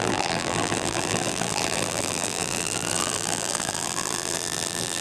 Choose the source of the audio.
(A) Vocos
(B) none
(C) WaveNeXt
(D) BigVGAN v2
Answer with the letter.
D